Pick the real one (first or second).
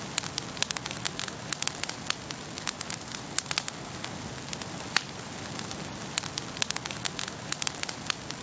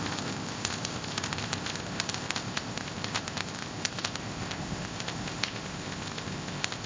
first